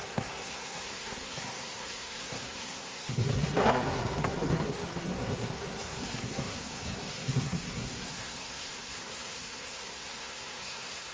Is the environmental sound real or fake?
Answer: fake